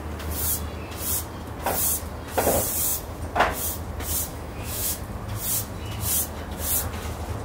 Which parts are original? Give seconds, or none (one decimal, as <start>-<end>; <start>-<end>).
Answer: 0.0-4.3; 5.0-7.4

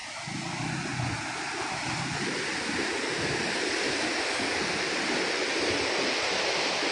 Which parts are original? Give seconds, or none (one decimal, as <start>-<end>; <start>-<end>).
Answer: 0.0-6.9

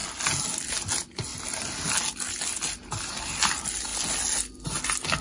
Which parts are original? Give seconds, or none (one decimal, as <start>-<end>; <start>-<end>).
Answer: 0.0-5.2

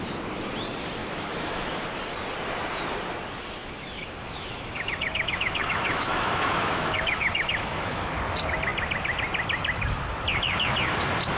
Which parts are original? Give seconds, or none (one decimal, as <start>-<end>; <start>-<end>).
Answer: 0.0-1.0; 1.8-3.6; 8.1-11.4

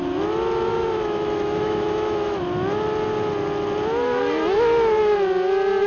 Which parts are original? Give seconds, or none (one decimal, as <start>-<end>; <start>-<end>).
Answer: 0.0-0.7; 2.4-5.9

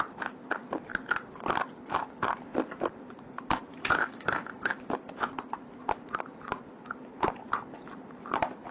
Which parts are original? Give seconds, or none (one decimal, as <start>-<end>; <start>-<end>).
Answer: 0.0-3.7; 4.8-8.7